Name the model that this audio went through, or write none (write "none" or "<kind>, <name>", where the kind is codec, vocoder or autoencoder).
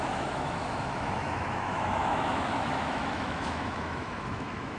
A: autoencoder, DAC-VAE